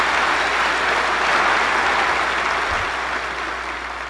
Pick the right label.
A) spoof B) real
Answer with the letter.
B